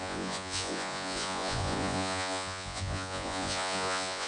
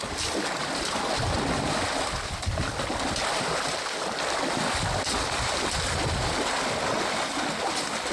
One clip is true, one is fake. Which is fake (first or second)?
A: first